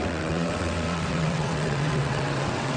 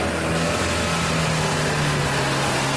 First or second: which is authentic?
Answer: second